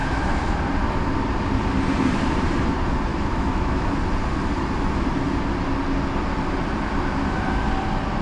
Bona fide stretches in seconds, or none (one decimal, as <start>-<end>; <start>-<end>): 0.6-3.1; 3.9-8.2